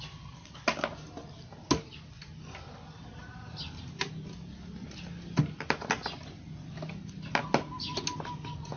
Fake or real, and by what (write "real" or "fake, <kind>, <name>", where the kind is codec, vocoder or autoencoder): real